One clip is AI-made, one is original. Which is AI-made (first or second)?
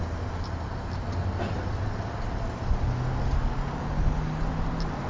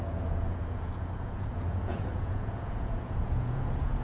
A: second